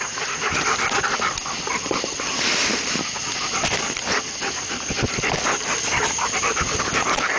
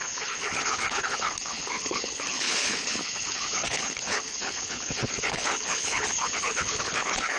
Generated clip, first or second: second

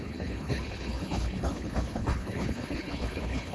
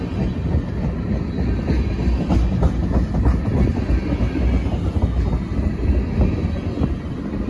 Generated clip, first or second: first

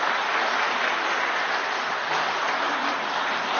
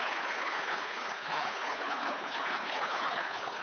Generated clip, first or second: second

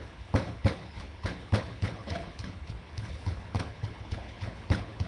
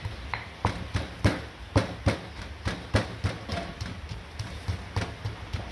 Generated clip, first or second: first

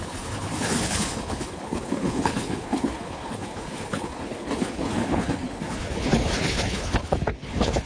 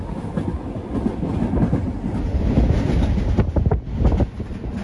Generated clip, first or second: first